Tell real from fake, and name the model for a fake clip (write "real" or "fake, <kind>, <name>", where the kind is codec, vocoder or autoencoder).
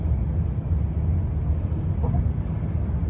real